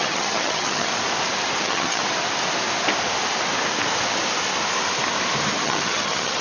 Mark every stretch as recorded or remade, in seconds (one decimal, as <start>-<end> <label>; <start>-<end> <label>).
0.0-0.9 remade; 0.9-1.6 recorded; 1.6-2.0 remade; 2.0-5.6 recorded; 5.6-6.4 remade